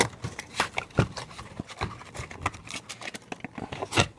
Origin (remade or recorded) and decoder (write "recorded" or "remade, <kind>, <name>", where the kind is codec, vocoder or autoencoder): recorded